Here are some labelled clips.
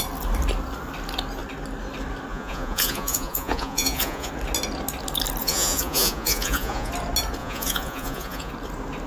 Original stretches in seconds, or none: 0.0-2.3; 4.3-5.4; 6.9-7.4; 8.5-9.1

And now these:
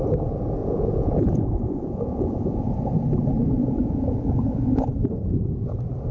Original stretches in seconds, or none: 0.0-0.6; 2.7-3.6; 4.9-6.1

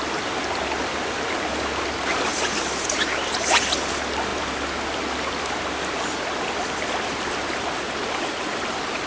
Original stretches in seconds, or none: 0.0-9.1

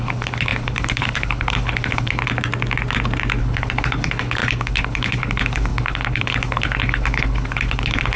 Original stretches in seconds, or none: 2.2-3.4

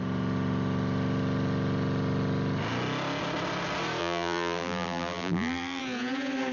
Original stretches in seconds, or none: 0.0-4.0; 5.8-6.5